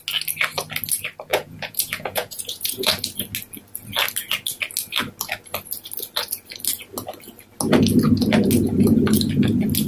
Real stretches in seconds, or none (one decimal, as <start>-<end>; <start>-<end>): 0.0-1.3; 2.9-9.9